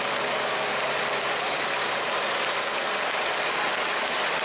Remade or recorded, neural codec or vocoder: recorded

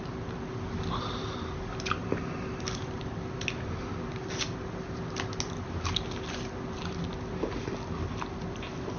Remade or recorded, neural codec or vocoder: recorded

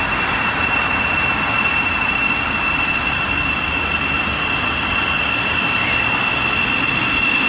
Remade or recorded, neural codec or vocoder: recorded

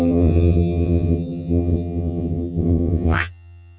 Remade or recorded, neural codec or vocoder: remade, vocoder, HiFi-GAN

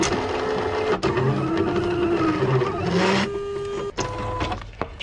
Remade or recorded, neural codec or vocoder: recorded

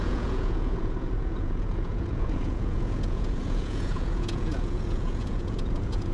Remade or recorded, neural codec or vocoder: remade, vocoder, Vocos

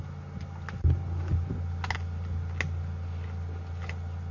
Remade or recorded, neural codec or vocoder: recorded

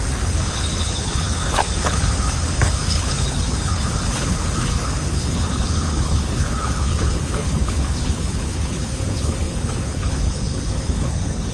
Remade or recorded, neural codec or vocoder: remade, codec, HILCodec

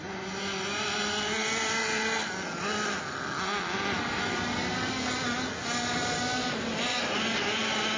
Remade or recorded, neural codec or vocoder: recorded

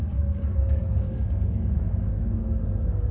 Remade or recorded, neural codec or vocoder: remade, codec, SNAC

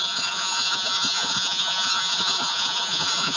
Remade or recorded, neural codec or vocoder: remade, vocoder, Vocos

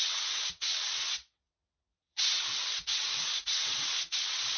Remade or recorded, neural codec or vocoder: remade, vocoder, WaveNeXt